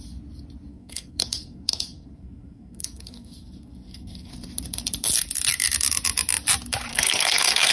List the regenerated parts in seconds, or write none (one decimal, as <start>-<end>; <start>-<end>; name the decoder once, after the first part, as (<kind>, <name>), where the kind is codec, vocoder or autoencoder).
0.7-4.3 (codec, SNAC); 6.9-7.7